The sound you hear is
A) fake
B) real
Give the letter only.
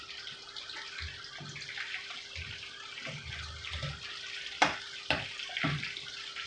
B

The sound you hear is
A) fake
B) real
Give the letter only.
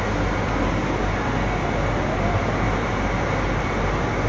B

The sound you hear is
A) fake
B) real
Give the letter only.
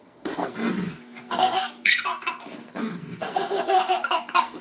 A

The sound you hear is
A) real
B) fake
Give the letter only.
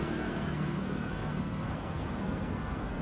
B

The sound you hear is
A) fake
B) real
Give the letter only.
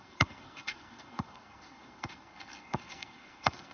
A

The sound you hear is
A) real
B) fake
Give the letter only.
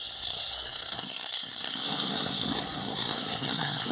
B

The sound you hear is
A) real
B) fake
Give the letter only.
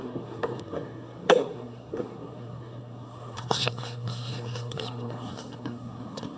B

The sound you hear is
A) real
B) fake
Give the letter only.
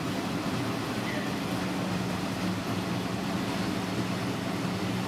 A